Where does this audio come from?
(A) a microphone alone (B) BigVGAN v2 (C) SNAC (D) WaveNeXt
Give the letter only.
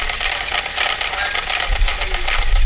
A